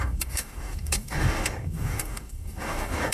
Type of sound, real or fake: fake